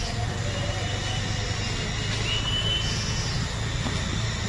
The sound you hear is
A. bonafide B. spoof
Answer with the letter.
A